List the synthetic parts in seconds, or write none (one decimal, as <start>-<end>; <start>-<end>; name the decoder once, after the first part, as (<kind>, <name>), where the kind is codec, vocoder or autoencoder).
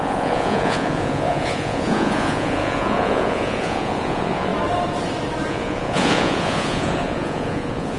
0.0-4.5 (vocoder, Vocos); 5.5-8.0